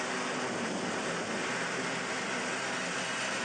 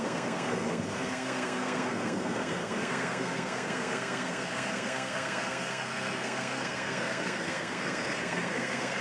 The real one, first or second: first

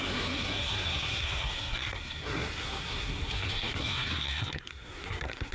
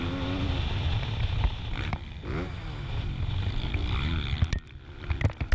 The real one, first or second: second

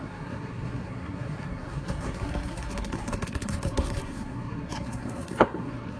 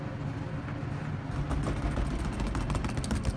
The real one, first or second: second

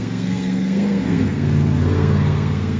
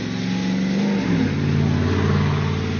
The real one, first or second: second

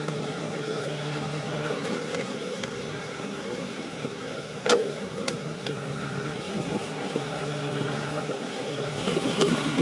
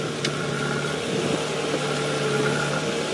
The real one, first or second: second